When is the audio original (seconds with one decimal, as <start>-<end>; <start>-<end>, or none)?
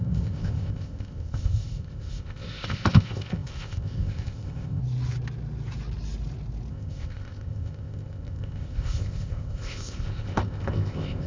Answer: 4.8-6.7